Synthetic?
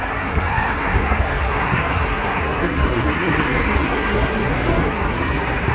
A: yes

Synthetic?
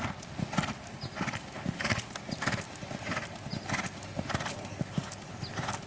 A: no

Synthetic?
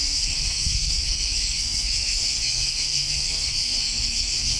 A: yes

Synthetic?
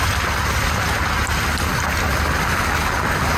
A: no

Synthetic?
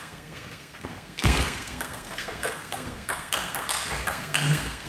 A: yes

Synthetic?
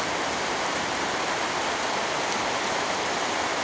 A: no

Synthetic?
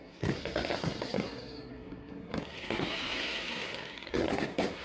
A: yes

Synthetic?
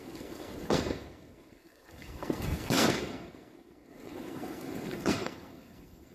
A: yes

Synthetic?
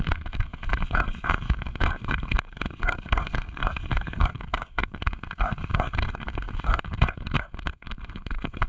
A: yes